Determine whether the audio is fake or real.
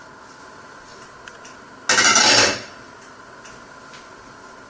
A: real